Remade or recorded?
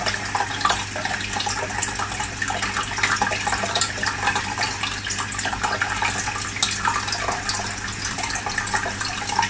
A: recorded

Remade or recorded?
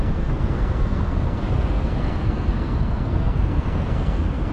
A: remade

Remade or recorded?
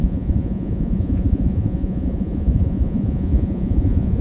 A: remade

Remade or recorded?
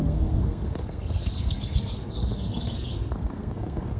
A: remade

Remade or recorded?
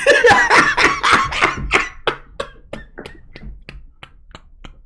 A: recorded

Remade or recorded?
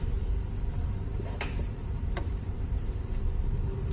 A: remade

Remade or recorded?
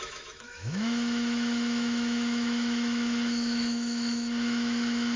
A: remade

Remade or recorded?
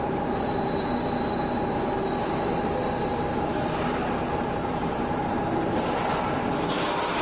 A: recorded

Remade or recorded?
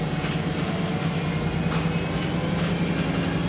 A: recorded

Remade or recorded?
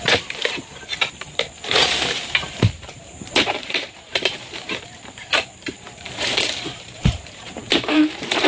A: remade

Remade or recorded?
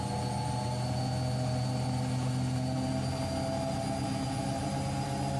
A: recorded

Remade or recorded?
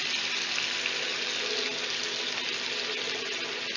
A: recorded